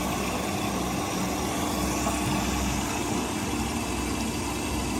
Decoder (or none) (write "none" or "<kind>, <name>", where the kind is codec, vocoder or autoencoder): none